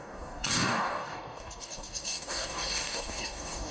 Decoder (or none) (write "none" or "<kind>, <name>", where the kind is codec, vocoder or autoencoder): codec, DAC